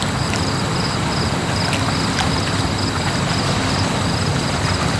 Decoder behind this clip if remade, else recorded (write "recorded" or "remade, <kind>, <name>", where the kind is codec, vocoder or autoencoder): recorded